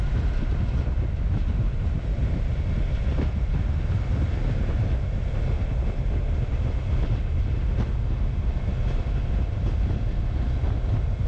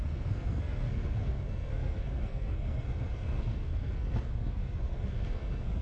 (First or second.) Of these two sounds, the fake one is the second